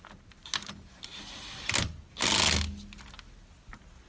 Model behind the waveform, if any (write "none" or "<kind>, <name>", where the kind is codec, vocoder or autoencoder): none